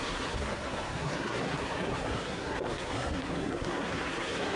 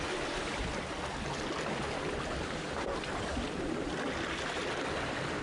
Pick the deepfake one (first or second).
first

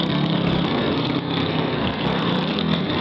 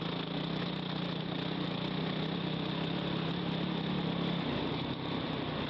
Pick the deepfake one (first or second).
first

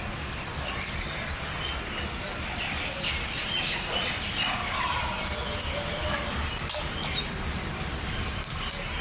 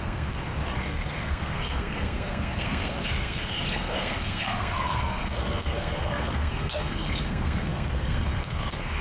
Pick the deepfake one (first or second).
second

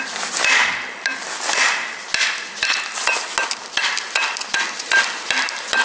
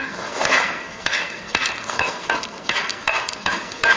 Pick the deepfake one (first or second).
second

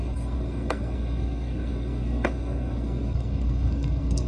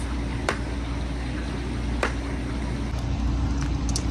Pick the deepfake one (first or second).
first